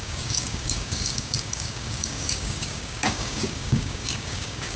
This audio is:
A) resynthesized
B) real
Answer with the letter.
A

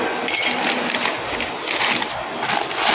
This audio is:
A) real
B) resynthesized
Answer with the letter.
A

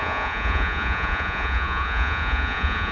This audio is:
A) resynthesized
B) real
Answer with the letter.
A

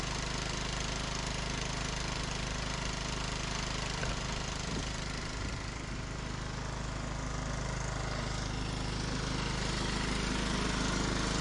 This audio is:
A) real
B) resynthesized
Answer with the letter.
A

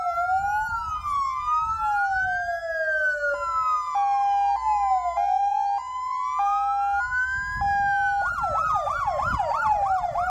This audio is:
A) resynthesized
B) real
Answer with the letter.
B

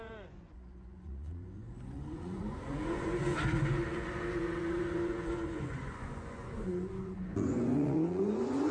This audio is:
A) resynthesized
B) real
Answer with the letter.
A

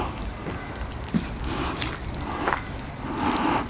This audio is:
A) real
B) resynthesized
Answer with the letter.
A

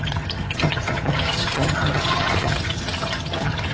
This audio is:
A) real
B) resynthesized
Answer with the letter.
B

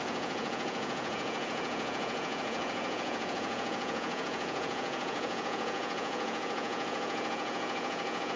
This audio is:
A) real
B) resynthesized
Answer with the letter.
B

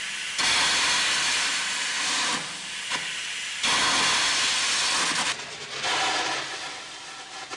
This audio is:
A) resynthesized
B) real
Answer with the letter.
B